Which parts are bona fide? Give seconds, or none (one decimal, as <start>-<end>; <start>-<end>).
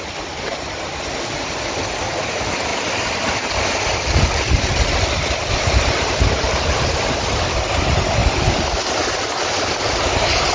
0.0-10.5